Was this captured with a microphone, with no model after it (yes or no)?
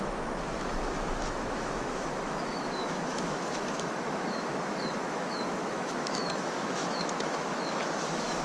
no